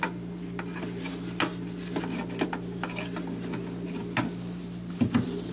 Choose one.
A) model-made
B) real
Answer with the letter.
B